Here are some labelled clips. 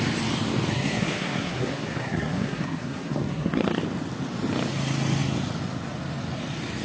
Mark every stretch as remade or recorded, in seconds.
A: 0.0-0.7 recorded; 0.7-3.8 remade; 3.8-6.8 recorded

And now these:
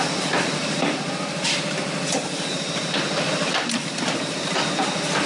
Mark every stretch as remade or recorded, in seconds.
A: 0.0-5.3 recorded